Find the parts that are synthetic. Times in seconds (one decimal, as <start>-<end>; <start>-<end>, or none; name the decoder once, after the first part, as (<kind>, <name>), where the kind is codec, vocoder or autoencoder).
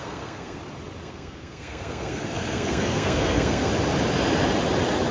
0.0-0.6 (codec, SNAC); 1.0-3.7